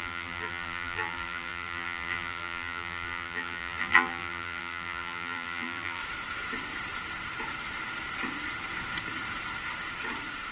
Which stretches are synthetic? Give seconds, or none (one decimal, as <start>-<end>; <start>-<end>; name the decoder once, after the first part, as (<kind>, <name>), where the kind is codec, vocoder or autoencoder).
0.0-6.0 (vocoder, BigVGAN v2)